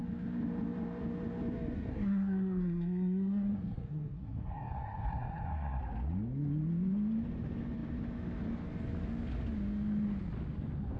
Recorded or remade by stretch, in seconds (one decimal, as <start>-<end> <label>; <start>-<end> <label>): 0.0-1.9 recorded; 1.9-5.8 remade; 5.8-11.0 recorded